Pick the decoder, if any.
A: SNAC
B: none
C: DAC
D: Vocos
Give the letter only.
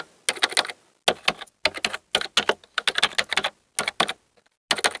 B